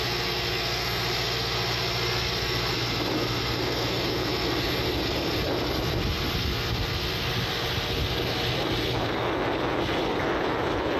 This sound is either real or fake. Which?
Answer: real